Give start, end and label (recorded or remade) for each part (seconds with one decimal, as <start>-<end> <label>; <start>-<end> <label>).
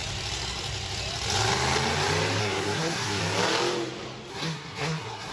0.0-2.4 recorded; 2.4-3.2 remade; 3.2-4.3 recorded; 4.3-5.3 remade